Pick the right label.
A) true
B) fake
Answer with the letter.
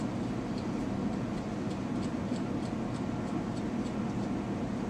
A